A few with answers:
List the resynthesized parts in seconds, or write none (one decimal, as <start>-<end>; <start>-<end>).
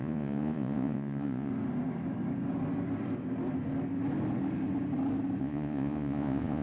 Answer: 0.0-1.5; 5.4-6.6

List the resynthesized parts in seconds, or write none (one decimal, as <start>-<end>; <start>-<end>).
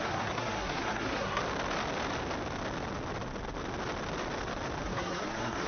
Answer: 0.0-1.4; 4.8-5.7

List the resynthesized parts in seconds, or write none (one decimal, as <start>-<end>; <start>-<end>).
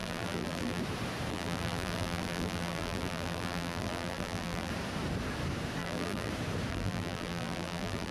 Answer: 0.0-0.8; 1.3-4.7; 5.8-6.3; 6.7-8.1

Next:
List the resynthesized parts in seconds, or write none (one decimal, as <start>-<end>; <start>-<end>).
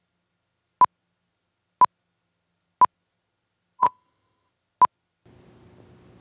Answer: 3.8-4.5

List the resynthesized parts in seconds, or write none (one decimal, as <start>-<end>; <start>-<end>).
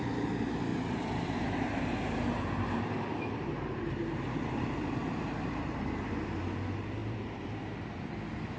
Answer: 0.7-5.8; 7.0-7.5